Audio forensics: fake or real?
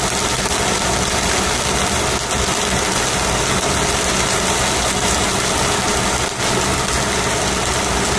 real